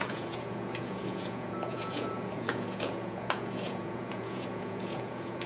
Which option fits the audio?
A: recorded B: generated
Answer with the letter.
B